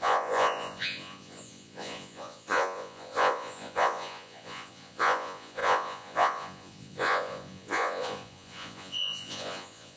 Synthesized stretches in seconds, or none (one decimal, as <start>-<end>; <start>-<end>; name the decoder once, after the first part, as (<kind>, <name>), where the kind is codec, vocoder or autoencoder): 0.0-10.0 (vocoder, Vocos)